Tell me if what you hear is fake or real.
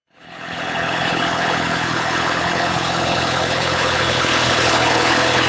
fake